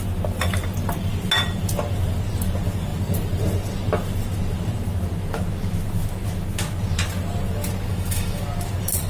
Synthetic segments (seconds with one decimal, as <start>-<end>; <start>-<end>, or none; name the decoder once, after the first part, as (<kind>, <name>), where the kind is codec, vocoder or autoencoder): 7.9-8.4 (autoencoder, DAC-VAE)